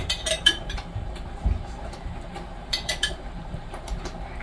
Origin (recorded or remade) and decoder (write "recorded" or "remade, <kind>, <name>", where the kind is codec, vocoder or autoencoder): remade, vocoder, BigVGAN v2